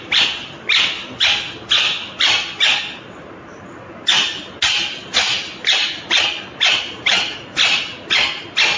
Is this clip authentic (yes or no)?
yes